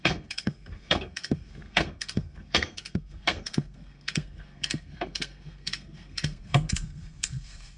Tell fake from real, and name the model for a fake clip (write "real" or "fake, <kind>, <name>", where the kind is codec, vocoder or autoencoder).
fake, codec, SNAC